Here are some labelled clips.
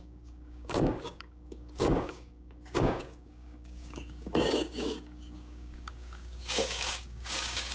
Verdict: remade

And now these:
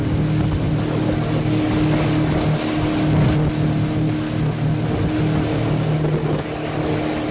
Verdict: recorded